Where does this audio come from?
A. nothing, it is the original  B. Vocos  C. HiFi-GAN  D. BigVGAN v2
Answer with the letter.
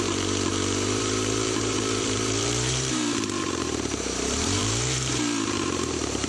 D